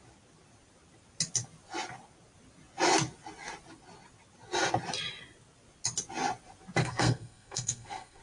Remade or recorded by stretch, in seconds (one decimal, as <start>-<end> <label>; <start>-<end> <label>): 0.0-6.8 recorded; 6.8-8.2 remade